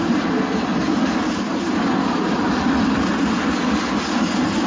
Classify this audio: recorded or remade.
recorded